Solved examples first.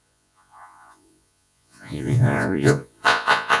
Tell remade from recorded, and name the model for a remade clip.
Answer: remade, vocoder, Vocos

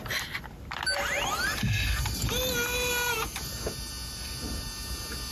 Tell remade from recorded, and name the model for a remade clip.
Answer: recorded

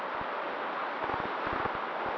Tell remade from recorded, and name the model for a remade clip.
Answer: recorded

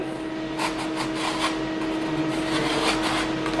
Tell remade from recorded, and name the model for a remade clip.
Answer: recorded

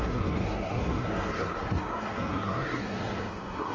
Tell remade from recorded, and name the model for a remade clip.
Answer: remade, codec, SNAC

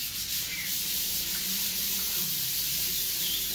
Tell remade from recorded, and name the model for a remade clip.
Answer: remade, vocoder, BigVGAN v2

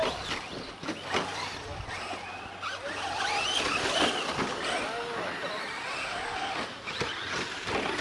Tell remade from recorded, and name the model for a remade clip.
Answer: recorded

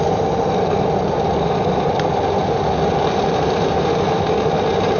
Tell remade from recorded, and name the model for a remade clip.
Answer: recorded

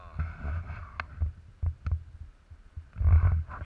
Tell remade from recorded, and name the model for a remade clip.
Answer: recorded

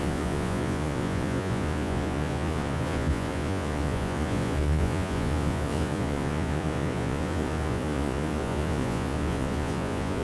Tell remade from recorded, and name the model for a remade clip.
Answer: remade, vocoder, Vocos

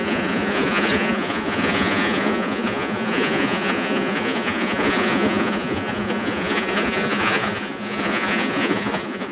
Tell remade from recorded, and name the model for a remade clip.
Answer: remade, vocoder, Vocos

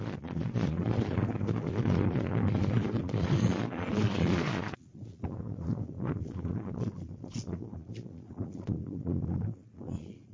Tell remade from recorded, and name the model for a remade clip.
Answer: remade, vocoder, Vocos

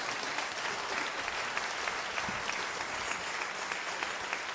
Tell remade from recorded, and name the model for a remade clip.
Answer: recorded